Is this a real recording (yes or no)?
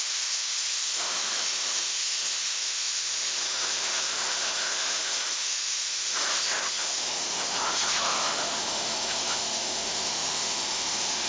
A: no